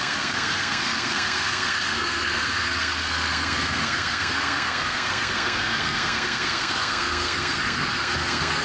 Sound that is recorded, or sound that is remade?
remade